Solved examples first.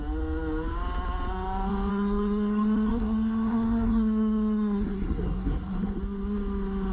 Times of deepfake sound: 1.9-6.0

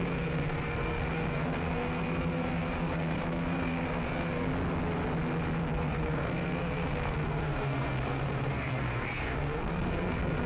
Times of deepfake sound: 0.0-4.5; 5.6-10.5

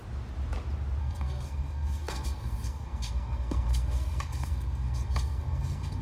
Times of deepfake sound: 1.0-6.0

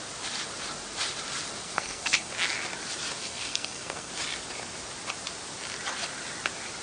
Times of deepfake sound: 1.6-2.3; 3.2-4.1

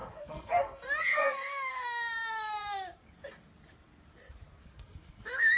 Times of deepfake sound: 0.0-1.7; 4.6-5.6

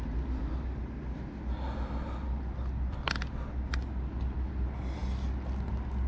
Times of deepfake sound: none